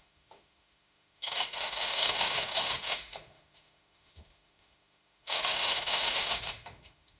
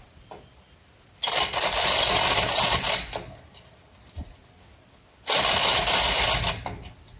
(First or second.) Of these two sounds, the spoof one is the first